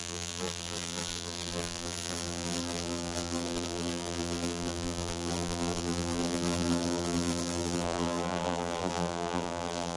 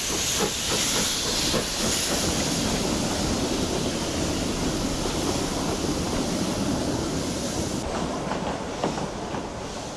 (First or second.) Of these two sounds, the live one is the second